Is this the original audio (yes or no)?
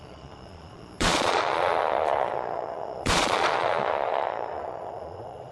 no